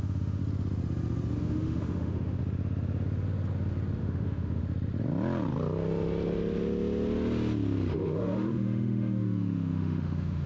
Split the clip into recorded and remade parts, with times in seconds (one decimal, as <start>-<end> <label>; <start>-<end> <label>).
0.0-0.4 remade; 0.4-1.4 recorded; 1.4-2.4 remade; 2.4-4.0 recorded; 4.0-4.6 remade; 4.6-7.9 recorded; 7.9-10.5 remade